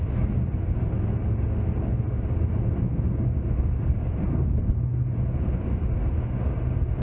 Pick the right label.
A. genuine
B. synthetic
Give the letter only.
A